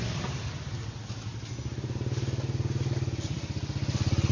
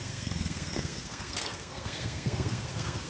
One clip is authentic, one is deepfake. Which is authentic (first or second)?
first